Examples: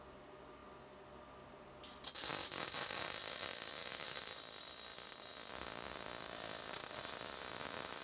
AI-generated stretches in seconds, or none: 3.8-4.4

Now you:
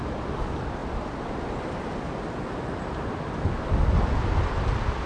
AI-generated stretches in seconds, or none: none

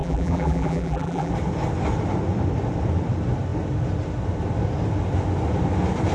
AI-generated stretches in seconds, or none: 0.0-1.3

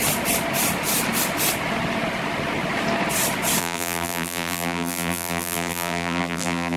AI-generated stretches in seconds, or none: 3.6-6.8

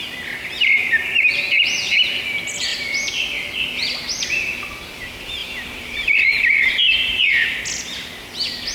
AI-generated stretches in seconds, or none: 5.4-7.6